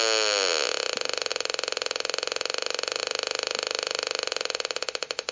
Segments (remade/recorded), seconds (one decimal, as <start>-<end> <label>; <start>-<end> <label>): 0.0-5.3 recorded

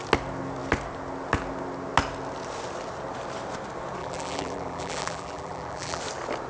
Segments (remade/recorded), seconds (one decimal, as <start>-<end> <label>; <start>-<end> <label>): 0.0-4.0 recorded; 4.0-6.0 remade; 6.0-6.5 recorded

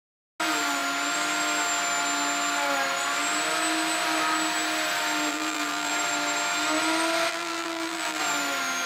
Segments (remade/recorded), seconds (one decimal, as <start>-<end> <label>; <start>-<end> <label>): 0.0-5.3 recorded; 5.3-5.9 remade; 5.9-7.3 recorded; 7.3-8.2 remade; 8.2-8.9 recorded

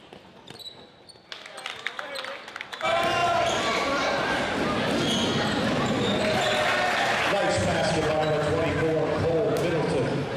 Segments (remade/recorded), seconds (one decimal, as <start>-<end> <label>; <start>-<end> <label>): 0.0-1.7 recorded; 1.7-2.7 remade; 2.7-3.2 recorded; 3.2-7.0 remade; 7.0-10.4 recorded